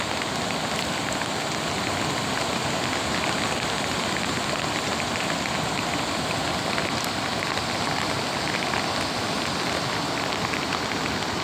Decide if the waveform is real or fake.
real